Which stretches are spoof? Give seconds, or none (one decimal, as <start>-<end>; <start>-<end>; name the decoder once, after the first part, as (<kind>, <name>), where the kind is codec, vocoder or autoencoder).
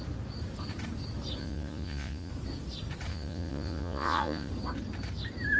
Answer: 1.4-2.3 (vocoder, Vocos); 3.1-4.5